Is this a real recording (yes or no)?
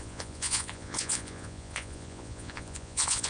no